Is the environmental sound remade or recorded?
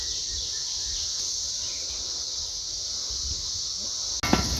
recorded